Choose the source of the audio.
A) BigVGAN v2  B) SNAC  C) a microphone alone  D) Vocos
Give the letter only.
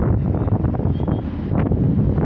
C